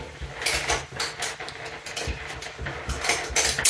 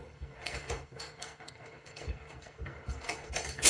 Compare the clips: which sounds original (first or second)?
first